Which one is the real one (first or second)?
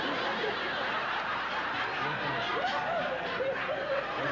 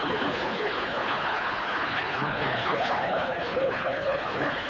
first